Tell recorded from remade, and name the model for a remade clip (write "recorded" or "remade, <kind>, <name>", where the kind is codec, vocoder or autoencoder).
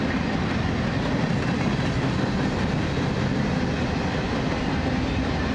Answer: recorded